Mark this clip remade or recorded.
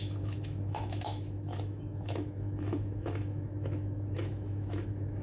remade